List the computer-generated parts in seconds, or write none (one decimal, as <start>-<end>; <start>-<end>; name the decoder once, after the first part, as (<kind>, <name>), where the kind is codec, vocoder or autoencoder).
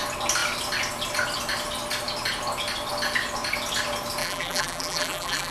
4.2-5.5 (vocoder, BigVGAN v2)